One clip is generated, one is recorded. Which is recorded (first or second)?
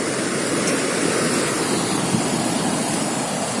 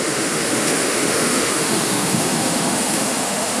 first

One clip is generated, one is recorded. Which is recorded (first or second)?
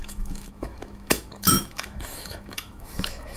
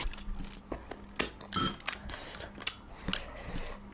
second